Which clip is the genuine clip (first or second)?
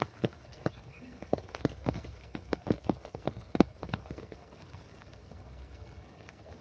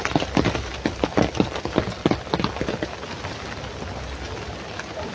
second